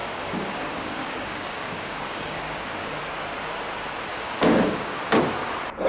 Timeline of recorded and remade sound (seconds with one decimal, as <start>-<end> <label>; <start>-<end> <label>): 0.0-3.0 remade; 3.0-4.1 recorded; 4.1-5.2 remade; 5.2-5.9 recorded